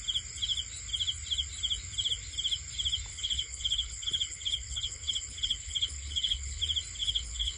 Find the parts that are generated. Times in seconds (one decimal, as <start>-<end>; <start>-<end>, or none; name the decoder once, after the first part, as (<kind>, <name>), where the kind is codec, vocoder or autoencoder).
3.1-6.6 (codec, HILCodec); 7.0-7.6